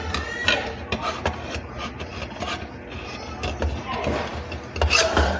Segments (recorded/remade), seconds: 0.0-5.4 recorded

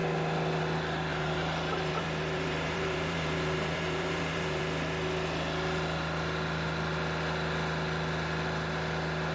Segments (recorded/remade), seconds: 0.0-1.1 recorded; 1.1-4.6 remade; 4.6-9.3 recorded

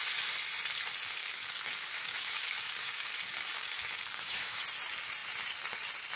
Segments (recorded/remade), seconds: 0.0-1.2 recorded; 1.2-4.6 remade; 4.6-6.2 recorded

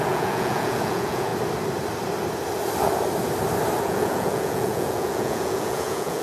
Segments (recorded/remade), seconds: 0.0-1.3 remade; 1.3-3.8 recorded; 3.8-6.2 remade

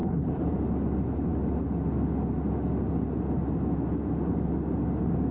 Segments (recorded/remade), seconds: 0.0-0.5 remade; 0.5-5.3 recorded

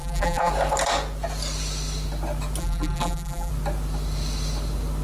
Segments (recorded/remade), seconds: 0.0-0.5 remade; 0.5-2.6 recorded; 2.6-3.5 remade; 3.5-5.0 recorded

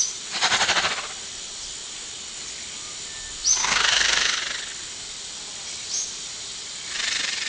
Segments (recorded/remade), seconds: 0.0-3.6 recorded; 3.6-4.4 remade; 4.4-7.5 recorded